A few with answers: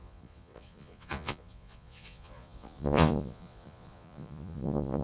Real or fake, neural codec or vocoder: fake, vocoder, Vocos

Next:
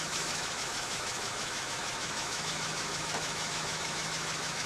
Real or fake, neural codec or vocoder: fake, autoencoder, DAC-VAE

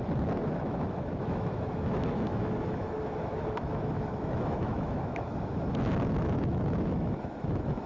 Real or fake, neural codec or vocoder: fake, autoencoder, DAC-VAE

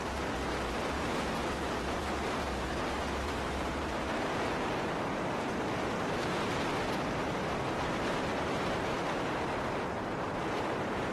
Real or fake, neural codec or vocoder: fake, vocoder, BigVGAN v2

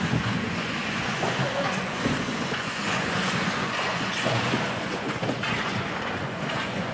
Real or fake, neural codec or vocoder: fake, vocoder, Vocos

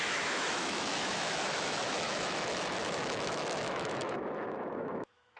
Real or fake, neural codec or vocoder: fake, autoencoder, DAC-VAE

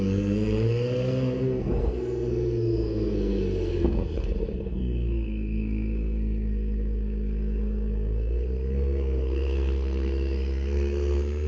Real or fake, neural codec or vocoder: fake, codec, SNAC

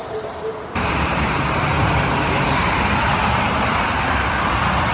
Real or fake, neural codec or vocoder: fake, vocoder, BigVGAN v2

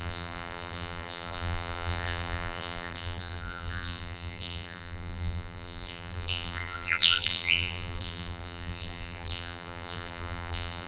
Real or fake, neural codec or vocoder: fake, vocoder, BigVGAN v2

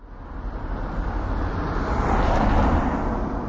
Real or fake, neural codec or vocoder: real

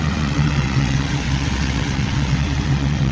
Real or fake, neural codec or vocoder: fake, vocoder, WaveNeXt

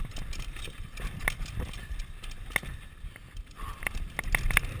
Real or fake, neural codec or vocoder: real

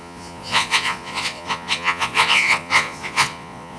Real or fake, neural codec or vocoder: fake, vocoder, Vocos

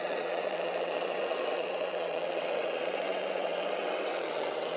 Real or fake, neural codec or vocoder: fake, vocoder, WaveNeXt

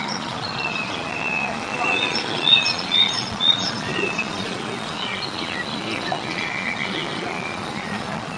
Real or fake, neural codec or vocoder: fake, vocoder, Vocos